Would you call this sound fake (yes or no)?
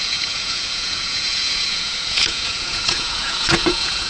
yes